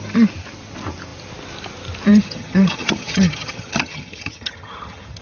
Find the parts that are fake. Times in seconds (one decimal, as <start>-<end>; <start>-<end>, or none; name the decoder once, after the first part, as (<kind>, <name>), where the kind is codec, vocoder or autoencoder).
2.1-5.2 (vocoder, HiFi-GAN)